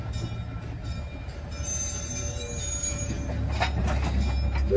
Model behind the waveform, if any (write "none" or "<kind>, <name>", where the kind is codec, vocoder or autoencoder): none